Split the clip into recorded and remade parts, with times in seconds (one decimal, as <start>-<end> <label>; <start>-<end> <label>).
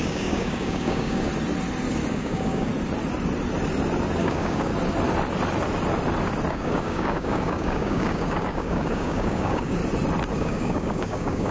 0.0-1.3 remade; 1.3-2.1 recorded; 2.1-2.7 remade; 2.7-4.2 recorded; 4.2-4.7 remade; 4.7-6.5 recorded; 6.5-9.8 remade; 9.8-10.4 recorded; 10.4-11.5 remade